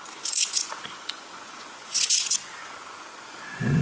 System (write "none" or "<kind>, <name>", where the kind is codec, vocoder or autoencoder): vocoder, Vocos